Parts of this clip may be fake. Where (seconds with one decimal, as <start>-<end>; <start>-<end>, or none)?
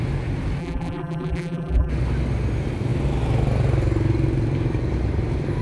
0.6-1.9